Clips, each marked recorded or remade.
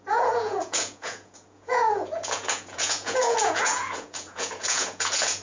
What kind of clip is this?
remade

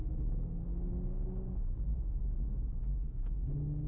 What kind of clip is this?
remade